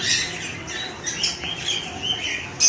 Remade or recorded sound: recorded